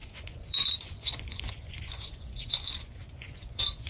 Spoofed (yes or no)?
yes